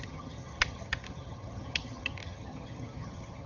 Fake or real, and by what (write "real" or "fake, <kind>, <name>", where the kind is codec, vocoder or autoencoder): fake, vocoder, HiFi-GAN